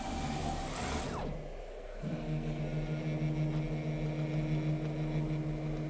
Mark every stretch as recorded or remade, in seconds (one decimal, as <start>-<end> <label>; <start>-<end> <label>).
0.0-1.7 recorded; 1.7-2.6 remade; 2.6-5.9 recorded